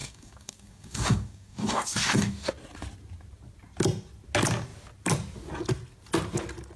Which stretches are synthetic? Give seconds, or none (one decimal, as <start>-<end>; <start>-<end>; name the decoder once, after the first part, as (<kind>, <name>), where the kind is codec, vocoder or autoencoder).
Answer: 0.0-2.5 (codec, DAC)